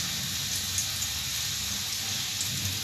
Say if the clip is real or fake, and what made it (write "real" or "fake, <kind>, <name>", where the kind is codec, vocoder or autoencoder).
real